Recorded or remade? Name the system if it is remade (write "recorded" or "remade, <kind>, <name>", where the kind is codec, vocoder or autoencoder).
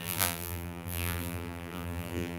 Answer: remade, vocoder, BigVGAN v2